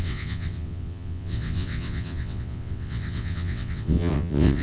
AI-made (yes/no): yes